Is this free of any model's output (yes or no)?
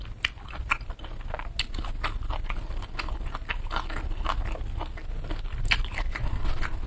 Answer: yes